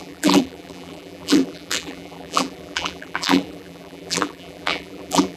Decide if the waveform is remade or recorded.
remade